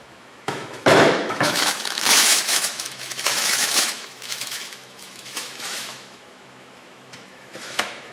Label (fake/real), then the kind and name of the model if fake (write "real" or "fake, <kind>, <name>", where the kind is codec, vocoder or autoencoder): fake, autoencoder, DAC-VAE